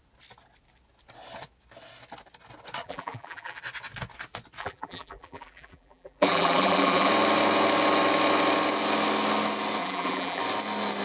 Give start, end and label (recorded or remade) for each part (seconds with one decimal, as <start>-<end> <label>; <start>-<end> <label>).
0.0-2.8 recorded; 2.8-3.6 remade; 3.6-4.6 recorded; 4.6-7.1 remade; 7.1-9.8 recorded; 9.8-10.4 remade; 10.4-11.0 recorded